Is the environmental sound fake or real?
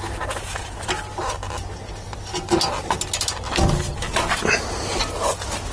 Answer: real